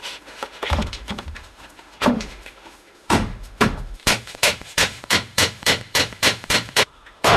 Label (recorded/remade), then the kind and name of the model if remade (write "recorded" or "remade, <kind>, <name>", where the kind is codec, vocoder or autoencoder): remade, autoencoder, DAC-VAE